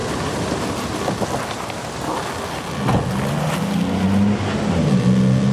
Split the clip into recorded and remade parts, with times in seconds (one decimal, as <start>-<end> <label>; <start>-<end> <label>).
0.0-5.5 recorded